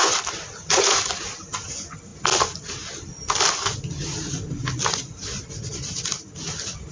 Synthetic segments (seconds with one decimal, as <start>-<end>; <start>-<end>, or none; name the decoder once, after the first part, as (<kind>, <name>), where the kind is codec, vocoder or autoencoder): none